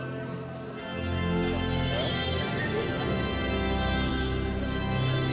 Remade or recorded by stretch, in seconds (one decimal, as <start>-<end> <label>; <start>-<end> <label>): 0.0-5.3 recorded